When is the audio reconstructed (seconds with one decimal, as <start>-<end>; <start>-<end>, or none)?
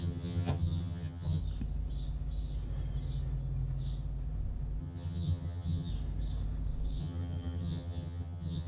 0.0-1.4; 4.8-5.9; 7.0-8.7